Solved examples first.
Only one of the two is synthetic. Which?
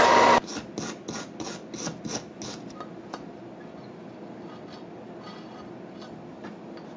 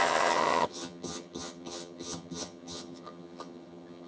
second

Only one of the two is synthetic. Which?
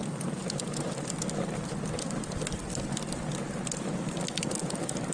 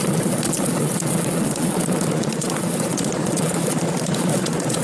second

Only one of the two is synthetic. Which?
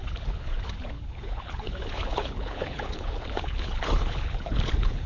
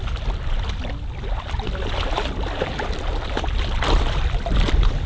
first